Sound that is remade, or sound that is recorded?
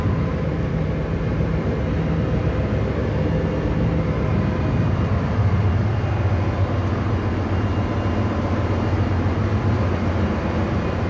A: recorded